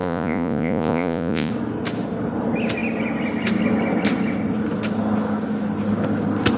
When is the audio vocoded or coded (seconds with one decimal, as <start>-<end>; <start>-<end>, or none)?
0.0-1.5